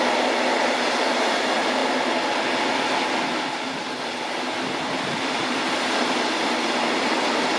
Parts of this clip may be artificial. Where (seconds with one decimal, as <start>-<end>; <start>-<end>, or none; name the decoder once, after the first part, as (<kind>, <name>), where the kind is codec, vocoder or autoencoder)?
none